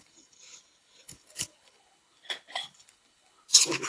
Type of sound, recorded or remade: remade